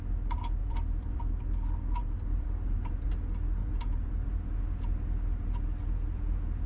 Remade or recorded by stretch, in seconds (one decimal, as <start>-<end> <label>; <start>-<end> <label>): 0.0-0.6 recorded; 0.6-1.2 remade; 1.2-2.0 recorded; 2.0-3.1 remade; 3.1-3.6 recorded; 3.6-4.6 remade; 4.6-6.7 recorded